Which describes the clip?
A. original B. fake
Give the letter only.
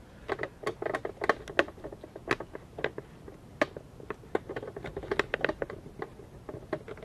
A